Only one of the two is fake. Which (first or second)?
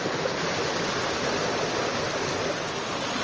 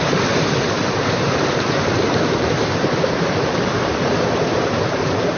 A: second